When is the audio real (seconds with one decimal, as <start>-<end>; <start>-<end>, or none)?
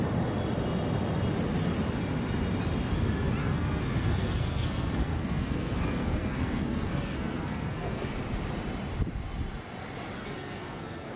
0.0-3.4; 8.1-10.2